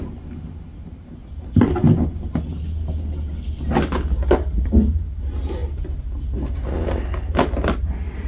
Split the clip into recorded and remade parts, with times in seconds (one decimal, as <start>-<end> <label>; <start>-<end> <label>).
0.0-8.3 recorded